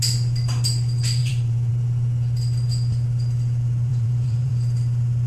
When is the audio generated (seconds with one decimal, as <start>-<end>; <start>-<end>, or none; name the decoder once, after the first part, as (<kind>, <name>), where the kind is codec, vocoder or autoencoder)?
1.2-1.7 (vocoder, BigVGAN v2); 3.9-4.5